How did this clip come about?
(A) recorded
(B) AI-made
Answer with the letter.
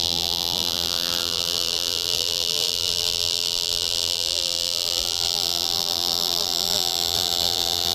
B